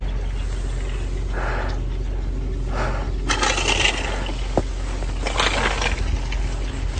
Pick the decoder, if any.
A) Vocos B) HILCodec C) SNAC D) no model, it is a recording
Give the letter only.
D